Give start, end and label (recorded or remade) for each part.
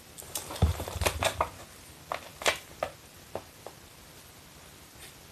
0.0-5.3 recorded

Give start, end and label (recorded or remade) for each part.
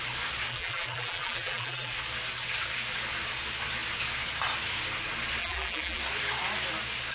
0.0-0.5 recorded; 0.5-1.9 remade; 1.9-5.4 recorded; 5.4-6.0 remade; 6.0-7.1 recorded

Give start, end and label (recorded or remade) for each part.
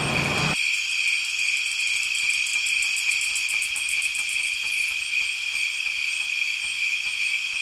0.0-0.6 remade; 0.6-1.7 recorded; 1.7-2.5 remade; 2.5-3.1 recorded; 3.1-7.6 remade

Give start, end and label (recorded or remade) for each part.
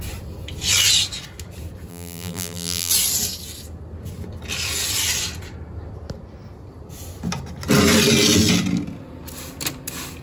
0.0-1.9 recorded; 1.9-2.9 remade; 2.9-10.2 recorded